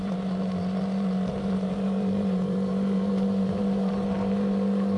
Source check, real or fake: fake